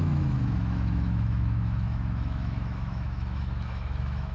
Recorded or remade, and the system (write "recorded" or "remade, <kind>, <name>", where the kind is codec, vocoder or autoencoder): remade, autoencoder, DAC-VAE